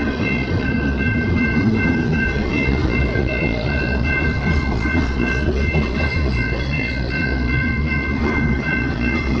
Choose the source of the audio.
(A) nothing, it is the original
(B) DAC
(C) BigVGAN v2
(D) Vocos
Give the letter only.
D